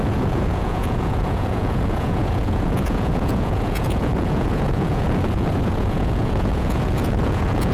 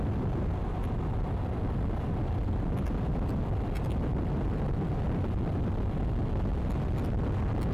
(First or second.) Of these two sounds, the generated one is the first